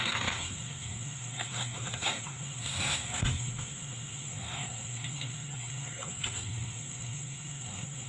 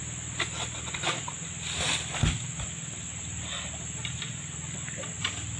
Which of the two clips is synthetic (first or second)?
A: first